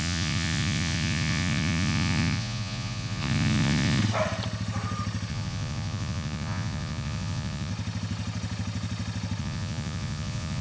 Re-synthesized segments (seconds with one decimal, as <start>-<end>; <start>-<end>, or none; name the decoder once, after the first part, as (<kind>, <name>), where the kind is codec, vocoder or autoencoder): 0.0-4.0 (vocoder, Vocos); 5.3-7.7; 9.4-10.6